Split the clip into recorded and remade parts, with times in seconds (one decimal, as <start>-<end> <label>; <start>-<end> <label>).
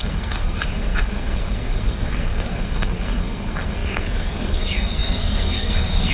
0.0-6.1 remade